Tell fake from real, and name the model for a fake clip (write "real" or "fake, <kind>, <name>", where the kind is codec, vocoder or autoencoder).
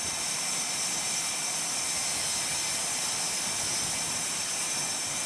real